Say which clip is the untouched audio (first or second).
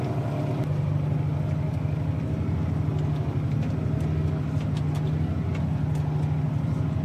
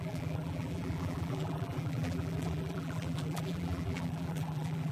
first